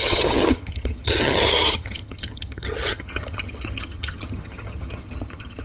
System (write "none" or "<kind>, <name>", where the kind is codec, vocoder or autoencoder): vocoder, HiFi-GAN